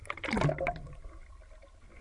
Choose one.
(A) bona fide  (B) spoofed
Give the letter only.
A